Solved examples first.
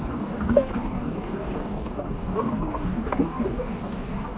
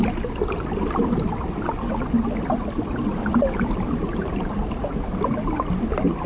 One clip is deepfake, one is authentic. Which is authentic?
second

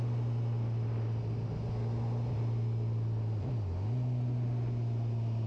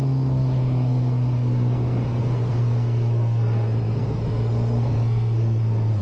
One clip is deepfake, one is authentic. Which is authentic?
first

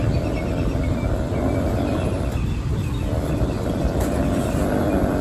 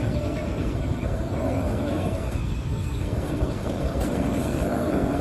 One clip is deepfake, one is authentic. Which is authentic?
first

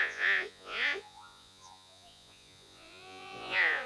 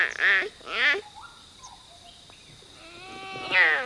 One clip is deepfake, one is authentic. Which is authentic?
second